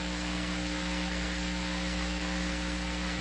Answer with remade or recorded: remade